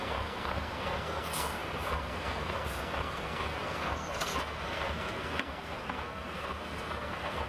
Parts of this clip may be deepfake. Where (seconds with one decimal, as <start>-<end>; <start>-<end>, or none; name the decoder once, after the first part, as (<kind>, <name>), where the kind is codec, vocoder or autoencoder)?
0.0-7.5 (codec, SNAC)